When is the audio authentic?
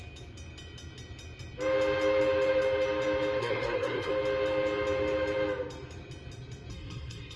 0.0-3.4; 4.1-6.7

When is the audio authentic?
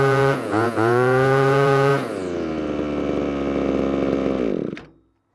1.9-5.3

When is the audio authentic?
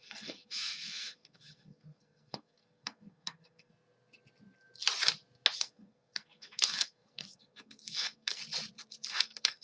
3.7-5.6; 8.4-9.1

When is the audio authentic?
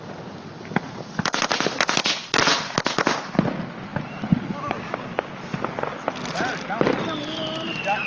0.0-8.1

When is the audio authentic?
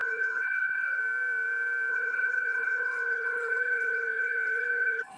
1.0-1.9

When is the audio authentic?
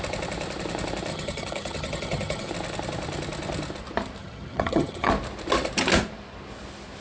0.0-1.1; 2.5-4.2; 5.1-7.0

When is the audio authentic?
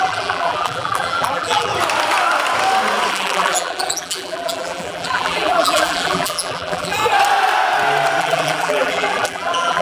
1.7-3.1; 7.0-8.2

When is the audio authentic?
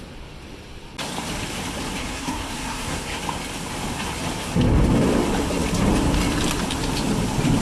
0.0-2.0; 3.2-7.6